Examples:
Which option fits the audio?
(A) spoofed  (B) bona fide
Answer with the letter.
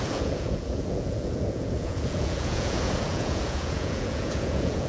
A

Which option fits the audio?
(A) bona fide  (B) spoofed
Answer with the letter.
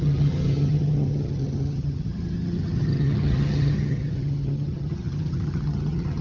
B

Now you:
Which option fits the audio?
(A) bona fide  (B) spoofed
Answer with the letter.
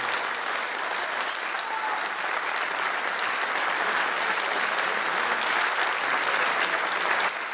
A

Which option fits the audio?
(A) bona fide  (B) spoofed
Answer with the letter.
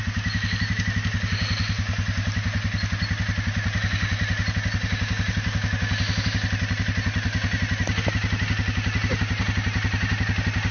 A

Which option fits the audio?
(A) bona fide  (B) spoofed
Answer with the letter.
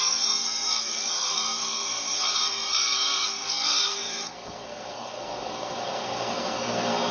B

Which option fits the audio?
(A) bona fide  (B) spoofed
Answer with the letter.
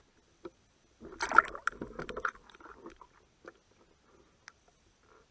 A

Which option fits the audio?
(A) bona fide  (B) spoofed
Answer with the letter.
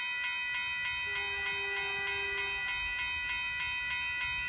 A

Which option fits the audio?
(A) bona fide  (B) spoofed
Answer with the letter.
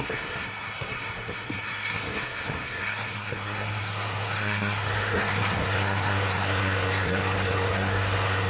B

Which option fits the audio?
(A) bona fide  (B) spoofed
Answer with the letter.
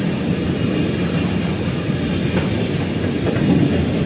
A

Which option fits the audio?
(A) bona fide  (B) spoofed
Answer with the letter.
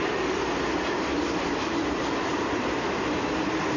A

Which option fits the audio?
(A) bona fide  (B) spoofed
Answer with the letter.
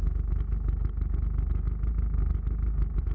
A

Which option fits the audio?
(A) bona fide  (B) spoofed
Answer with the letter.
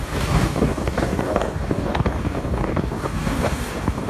B